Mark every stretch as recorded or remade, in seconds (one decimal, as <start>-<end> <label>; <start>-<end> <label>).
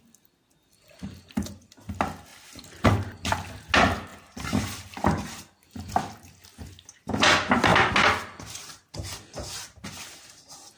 0.0-10.8 recorded